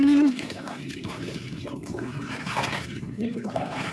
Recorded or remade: remade